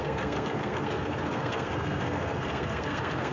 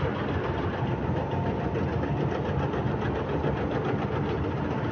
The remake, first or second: first